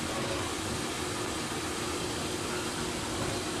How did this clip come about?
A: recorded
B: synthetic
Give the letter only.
A